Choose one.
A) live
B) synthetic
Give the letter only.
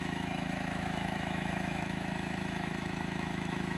B